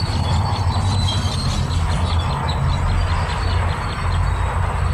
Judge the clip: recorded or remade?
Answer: recorded